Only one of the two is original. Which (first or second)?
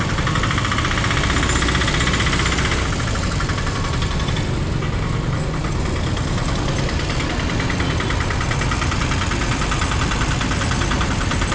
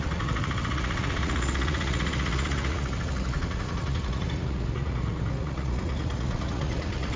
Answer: first